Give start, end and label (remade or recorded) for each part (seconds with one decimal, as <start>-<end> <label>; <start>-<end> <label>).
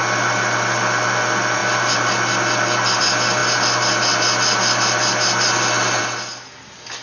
0.0-7.0 recorded